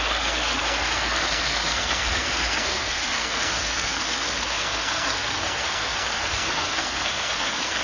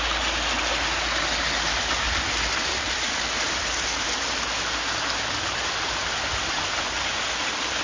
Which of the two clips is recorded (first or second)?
second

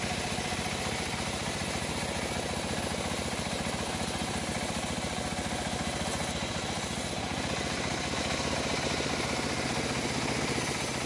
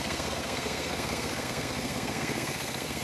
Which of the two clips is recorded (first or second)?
first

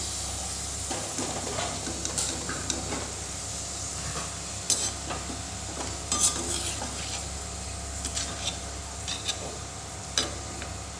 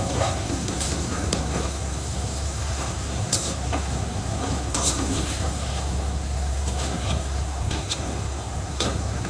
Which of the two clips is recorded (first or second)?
first